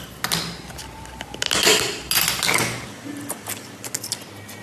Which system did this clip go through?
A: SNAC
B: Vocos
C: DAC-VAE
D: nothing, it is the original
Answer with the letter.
D